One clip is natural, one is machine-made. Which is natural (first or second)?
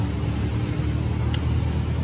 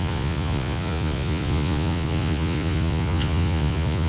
first